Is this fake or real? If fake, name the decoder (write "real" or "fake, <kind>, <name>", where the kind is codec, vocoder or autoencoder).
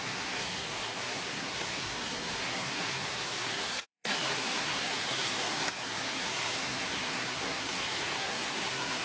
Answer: fake, codec, SNAC